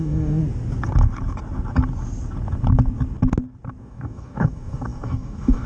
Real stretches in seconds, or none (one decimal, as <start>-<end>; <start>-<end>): 0.4-3.8